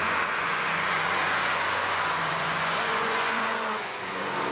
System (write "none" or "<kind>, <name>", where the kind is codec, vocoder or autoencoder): vocoder, Vocos